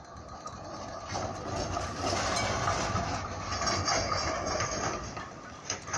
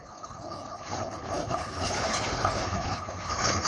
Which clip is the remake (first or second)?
second